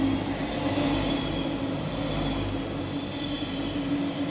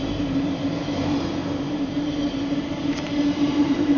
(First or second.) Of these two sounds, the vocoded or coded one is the second